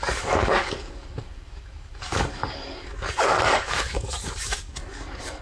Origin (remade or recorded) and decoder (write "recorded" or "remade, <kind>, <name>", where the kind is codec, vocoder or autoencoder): remade, codec, DAC